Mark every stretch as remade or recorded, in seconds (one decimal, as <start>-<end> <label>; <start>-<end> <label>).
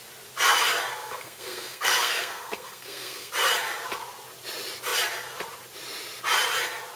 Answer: 0.0-0.9 recorded; 0.9-3.3 remade; 3.3-7.0 recorded